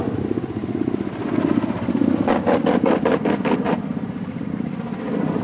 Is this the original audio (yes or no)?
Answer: yes